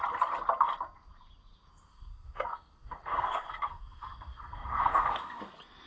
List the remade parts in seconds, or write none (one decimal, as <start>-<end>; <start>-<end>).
1.9-5.4